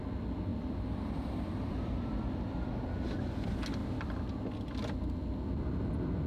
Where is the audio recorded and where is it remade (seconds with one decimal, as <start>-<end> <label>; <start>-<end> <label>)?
0.0-0.5 recorded; 0.5-2.7 remade; 2.7-6.3 recorded